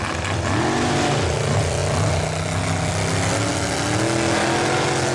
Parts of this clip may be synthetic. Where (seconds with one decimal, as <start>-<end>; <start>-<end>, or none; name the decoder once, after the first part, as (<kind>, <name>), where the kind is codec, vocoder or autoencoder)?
none